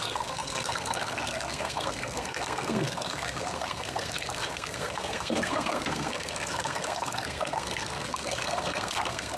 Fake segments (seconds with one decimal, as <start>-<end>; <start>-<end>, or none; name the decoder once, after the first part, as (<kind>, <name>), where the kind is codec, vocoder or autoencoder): 0.0-9.4 (codec, SNAC)